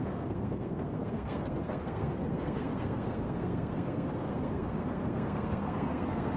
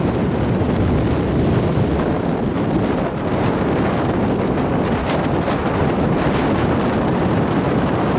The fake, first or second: first